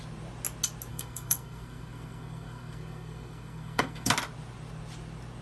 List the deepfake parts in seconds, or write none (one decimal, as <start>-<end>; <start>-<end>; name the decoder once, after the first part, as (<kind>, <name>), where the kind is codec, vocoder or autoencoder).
0.9-4.1 (codec, SNAC)